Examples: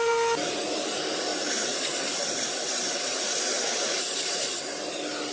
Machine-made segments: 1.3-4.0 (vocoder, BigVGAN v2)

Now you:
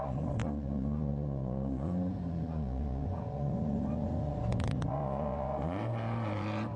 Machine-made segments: 0.0-6.8 (vocoder, Vocos)

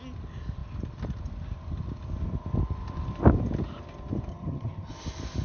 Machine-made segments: 4.3-4.9 (vocoder, HiFi-GAN)

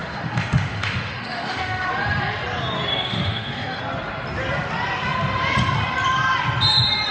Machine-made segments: 0.0-1.9 (autoencoder, DAC-VAE); 2.9-3.8

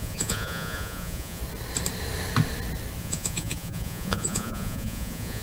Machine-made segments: 0.0-1.4 (vocoder, Vocos); 3.0-5.4

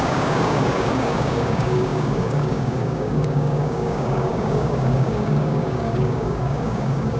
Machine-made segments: 0.0-7.2 (codec, DAC)